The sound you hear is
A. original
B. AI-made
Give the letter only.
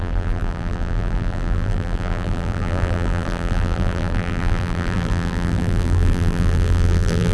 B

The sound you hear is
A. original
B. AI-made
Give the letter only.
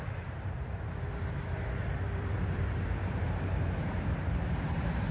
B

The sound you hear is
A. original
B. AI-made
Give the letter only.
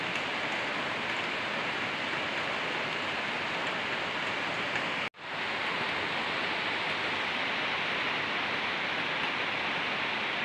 A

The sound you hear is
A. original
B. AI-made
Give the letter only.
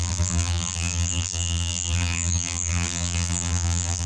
B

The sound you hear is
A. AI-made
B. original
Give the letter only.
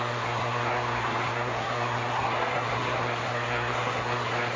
A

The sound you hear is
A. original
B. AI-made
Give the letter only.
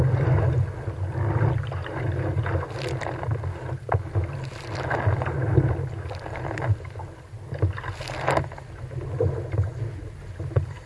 A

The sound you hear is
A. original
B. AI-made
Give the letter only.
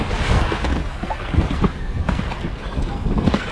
B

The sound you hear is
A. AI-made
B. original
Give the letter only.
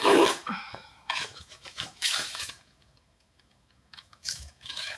A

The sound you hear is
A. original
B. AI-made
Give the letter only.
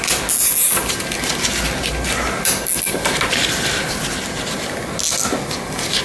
A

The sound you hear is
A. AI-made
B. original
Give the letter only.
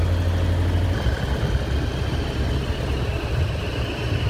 B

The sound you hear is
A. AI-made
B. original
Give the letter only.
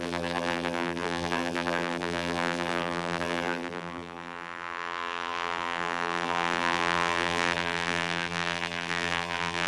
A